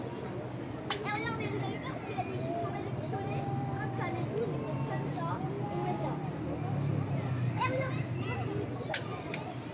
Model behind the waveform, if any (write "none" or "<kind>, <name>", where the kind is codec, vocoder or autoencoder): none